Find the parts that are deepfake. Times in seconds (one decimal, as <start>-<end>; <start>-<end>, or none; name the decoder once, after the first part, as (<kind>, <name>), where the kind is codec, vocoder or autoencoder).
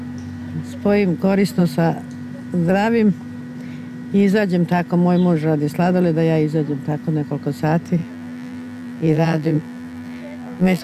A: 8.0-10.8 (vocoder, BigVGAN v2)